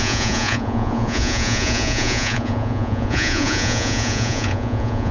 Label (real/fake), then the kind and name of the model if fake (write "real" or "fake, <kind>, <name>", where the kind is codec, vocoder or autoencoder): fake, vocoder, Vocos